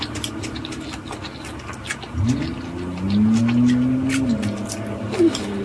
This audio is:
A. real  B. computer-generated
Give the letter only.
A